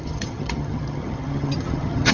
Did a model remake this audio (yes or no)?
yes